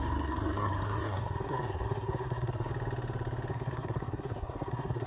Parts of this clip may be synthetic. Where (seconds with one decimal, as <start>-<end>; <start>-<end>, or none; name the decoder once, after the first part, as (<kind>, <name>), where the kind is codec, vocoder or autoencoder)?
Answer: 0.0-2.7 (codec, SNAC); 3.5-5.1